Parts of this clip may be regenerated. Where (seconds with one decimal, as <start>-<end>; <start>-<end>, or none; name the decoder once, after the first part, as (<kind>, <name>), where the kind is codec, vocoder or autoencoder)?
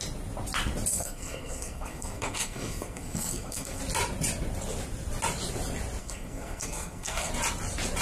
0.9-3.8 (codec, SNAC); 6.0-7.3